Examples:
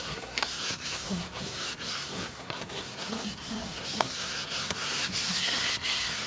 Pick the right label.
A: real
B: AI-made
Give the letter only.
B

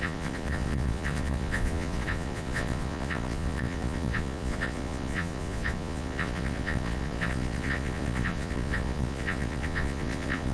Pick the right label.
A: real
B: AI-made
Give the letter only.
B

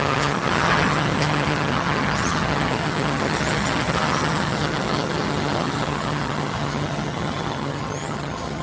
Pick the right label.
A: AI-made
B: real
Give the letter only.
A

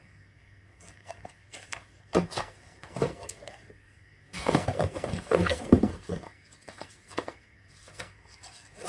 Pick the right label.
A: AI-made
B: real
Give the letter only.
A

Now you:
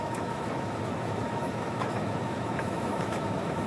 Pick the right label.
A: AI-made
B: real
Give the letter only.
A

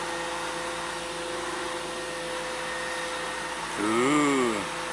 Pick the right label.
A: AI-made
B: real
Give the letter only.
B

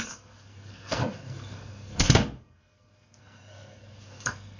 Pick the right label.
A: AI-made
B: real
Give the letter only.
A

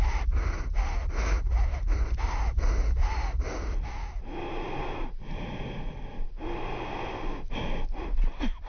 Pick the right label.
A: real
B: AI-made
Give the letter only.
A